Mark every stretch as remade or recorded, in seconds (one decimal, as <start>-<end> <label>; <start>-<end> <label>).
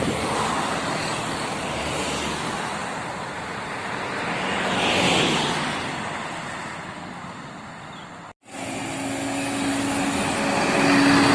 0.0-11.3 recorded